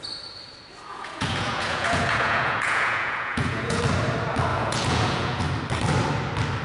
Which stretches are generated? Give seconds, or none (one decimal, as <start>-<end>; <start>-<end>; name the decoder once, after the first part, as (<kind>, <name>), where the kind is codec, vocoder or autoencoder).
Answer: 0.9-3.8 (vocoder, Vocos); 4.5-5.4